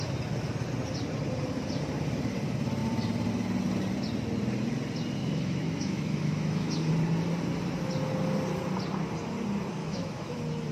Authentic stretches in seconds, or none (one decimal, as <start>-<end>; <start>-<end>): 0.0-5.2; 6.9-9.8